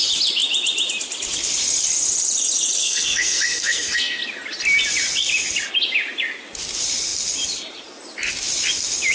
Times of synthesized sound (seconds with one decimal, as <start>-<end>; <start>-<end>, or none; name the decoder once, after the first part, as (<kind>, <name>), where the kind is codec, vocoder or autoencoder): 2.8-4.2 (codec, SNAC)

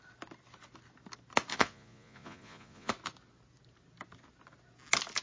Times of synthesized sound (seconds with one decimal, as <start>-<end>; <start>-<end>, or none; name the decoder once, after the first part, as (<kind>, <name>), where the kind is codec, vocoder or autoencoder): 1.5-2.9 (vocoder, Vocos)

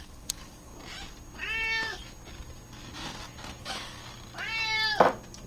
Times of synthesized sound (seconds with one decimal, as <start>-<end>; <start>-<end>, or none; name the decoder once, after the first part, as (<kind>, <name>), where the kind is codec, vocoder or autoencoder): 0.0-0.7 (codec, DAC); 3.6-4.0

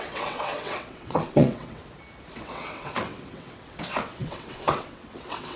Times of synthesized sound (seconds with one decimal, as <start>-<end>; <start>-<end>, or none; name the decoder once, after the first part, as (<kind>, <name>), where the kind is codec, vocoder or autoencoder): 0.0-1.8 (vocoder, WaveNeXt); 2.3-5.6

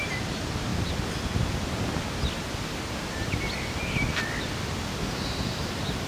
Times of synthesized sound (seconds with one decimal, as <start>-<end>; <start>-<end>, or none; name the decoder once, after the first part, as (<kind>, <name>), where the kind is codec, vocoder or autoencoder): 0.0-0.7 (vocoder, BigVGAN v2); 4.4-6.1

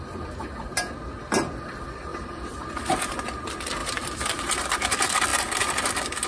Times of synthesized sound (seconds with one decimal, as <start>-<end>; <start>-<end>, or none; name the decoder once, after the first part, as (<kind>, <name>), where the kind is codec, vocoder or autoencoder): 2.1-2.7 (vocoder, BigVGAN v2); 3.8-4.6

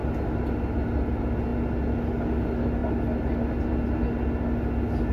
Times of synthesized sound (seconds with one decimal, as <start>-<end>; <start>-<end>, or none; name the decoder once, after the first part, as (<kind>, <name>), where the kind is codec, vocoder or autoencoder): none

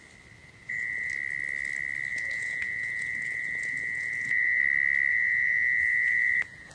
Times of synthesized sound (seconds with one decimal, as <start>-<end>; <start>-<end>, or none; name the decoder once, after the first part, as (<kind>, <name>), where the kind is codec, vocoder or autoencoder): 0.4-1.1 (vocoder, Vocos); 2.1-4.6; 5.1-6.7